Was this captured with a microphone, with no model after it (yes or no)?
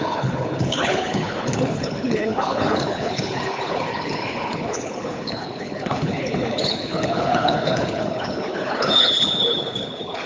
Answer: no